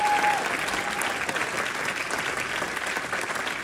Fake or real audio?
real